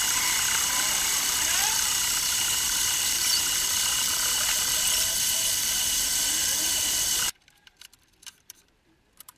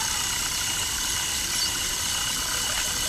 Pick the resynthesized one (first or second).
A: first